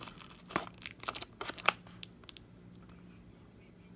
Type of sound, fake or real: real